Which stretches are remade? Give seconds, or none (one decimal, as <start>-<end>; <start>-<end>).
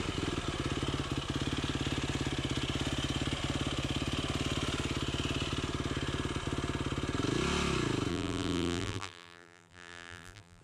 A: 8.1-10.6